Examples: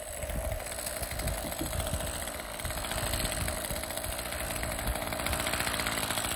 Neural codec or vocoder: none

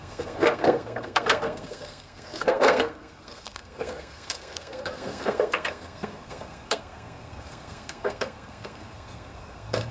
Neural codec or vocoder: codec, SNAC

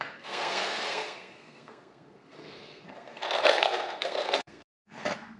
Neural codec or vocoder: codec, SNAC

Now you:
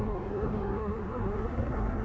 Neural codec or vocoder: codec, SNAC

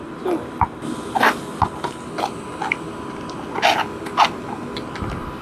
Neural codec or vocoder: none